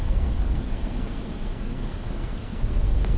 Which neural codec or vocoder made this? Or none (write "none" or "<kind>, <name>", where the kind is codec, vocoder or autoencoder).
codec, SNAC